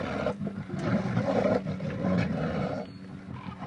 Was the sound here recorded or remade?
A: recorded